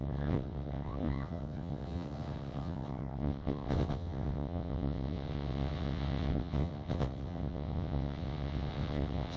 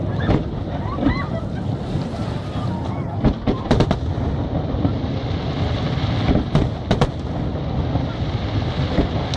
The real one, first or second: second